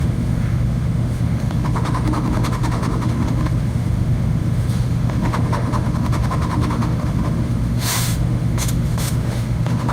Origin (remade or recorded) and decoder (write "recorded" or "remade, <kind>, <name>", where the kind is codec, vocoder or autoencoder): remade, autoencoder, DAC-VAE